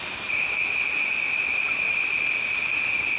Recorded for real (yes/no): yes